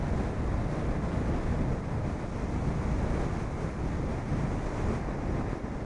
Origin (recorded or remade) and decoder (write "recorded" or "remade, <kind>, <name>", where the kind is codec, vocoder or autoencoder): recorded